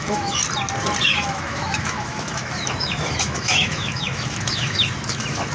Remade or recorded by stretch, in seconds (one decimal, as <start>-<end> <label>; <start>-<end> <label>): 0.0-0.4 remade; 0.4-1.0 recorded; 1.0-5.5 remade